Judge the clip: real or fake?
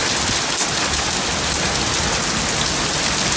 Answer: real